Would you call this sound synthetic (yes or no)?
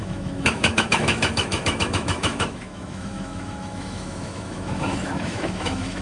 yes